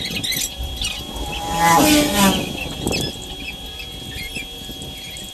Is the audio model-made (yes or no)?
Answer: no